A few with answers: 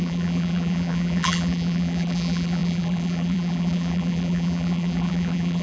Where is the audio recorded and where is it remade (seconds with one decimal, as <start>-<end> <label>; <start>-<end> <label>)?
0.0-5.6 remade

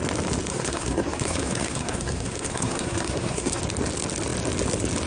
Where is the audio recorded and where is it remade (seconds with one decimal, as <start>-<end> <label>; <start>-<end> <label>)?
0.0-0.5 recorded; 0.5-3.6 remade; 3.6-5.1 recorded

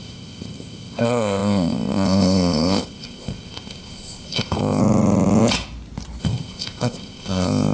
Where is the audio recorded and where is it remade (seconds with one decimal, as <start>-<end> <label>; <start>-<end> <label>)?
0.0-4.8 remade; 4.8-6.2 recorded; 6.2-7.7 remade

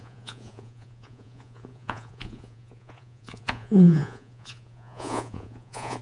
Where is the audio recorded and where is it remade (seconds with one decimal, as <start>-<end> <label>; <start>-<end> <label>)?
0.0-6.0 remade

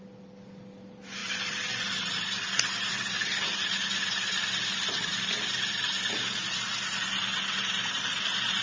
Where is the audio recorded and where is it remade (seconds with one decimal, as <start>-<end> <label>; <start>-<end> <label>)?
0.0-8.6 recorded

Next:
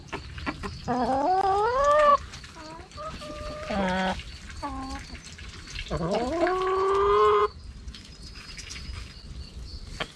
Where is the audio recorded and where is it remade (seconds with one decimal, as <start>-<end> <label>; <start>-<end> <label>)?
0.0-10.2 recorded

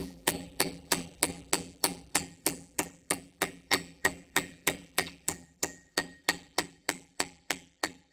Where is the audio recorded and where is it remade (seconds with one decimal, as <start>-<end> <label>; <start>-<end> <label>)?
0.0-8.1 remade

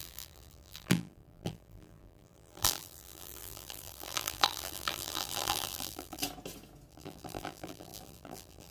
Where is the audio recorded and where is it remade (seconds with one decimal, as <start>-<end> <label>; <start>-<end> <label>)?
0.0-6.2 remade; 6.2-6.9 recorded; 6.9-8.7 remade